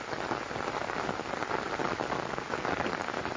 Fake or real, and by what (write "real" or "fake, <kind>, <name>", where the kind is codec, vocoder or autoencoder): real